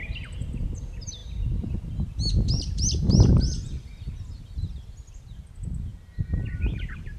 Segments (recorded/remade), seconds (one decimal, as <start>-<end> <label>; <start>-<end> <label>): 0.0-5.9 recorded; 5.9-7.2 remade